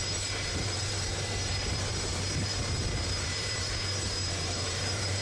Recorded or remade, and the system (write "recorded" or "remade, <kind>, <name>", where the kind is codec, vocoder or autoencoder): remade, vocoder, BigVGAN v2